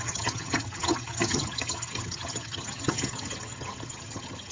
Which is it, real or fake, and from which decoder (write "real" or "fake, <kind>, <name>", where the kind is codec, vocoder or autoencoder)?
fake, vocoder, HiFi-GAN